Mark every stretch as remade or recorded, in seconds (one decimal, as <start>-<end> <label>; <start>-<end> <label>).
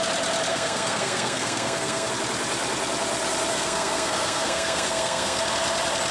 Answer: 0.0-0.5 recorded; 0.5-2.1 remade; 2.1-3.5 recorded; 3.5-5.4 remade; 5.4-6.1 recorded